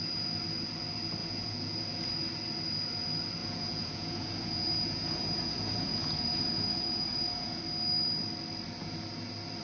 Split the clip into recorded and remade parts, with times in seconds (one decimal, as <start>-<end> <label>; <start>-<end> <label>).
0.0-1.2 recorded; 1.2-1.8 remade; 1.8-3.4 recorded; 3.4-7.6 remade; 7.6-9.6 recorded